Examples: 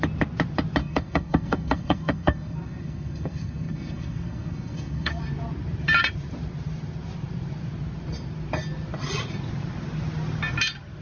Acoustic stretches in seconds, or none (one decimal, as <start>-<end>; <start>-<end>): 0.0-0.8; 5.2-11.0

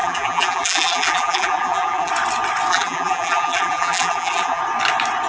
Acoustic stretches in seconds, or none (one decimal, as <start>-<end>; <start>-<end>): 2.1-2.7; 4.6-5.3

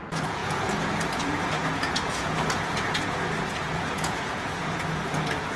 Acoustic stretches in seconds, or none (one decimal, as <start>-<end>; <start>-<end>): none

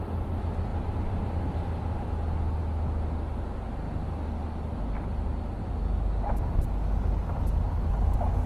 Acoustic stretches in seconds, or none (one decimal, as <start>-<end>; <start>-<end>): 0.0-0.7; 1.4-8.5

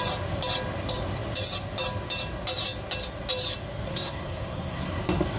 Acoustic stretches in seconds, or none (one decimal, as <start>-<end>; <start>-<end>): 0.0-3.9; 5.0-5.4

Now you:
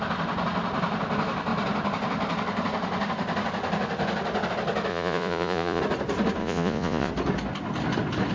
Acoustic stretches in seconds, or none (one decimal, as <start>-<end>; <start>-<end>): 0.0-4.9; 5.8-6.4; 7.1-8.3